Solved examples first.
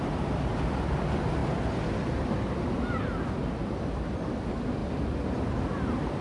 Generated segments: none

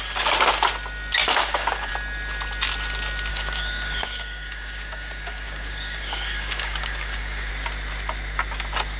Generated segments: 1.2-1.9 (codec, DAC); 3.3-7.5

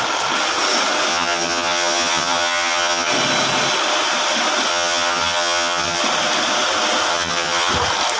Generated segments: 1.1-3.1 (vocoder, HiFi-GAN); 4.7-6.0; 7.1-7.7